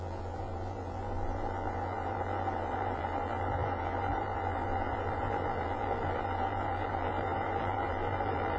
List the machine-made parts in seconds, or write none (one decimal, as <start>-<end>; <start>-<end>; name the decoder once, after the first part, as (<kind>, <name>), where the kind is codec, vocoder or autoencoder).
0.0-8.6 (vocoder, BigVGAN v2)